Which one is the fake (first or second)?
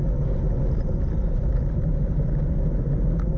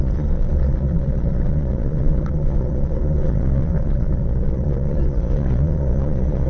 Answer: second